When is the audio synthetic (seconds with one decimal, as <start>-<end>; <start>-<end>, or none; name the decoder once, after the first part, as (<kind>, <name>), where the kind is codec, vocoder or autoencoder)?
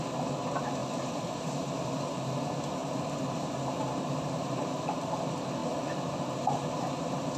0.8-1.9 (vocoder, BigVGAN v2); 2.8-5.1